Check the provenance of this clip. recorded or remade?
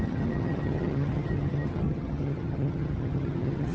remade